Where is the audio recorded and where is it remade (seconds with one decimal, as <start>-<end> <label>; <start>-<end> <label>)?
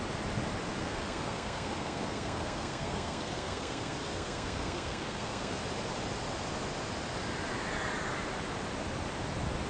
0.0-0.8 recorded; 0.8-5.6 remade; 5.6-9.7 recorded